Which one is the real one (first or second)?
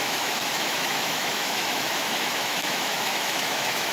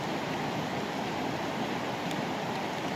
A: second